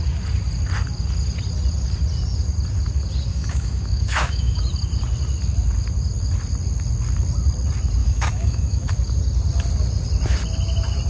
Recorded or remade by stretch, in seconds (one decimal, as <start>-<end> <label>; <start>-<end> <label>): 0.0-3.3 recorded; 3.3-4.6 remade; 4.6-8.0 recorded; 8.0-8.9 remade; 8.9-11.1 recorded